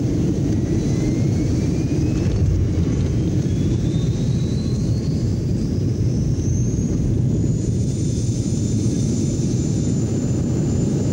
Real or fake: fake